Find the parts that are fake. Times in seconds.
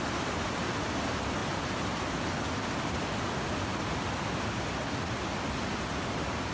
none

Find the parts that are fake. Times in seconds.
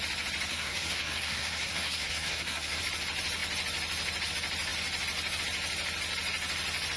0.5-2.8 (codec, SNAC)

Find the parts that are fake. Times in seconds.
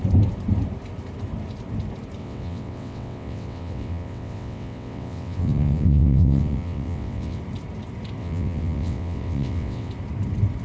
2.2-7.4 (vocoder, WaveNeXt); 8.2-9.9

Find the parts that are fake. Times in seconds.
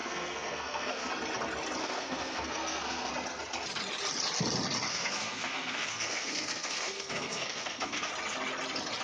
0.0-1.1 (codec, SNAC); 1.8-3.1; 4.9-8.1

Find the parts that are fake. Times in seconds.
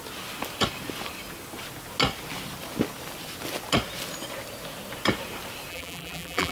5.7-6.5 (vocoder, BigVGAN v2)